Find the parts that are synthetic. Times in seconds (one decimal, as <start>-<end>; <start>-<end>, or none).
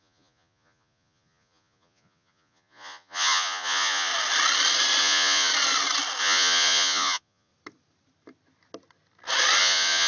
0.0-4.1; 5.0-5.5; 6.2-7.5; 9.6-10.1